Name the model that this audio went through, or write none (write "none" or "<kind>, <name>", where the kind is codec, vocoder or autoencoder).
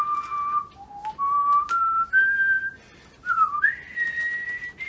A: none